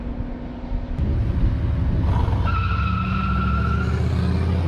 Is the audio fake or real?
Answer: real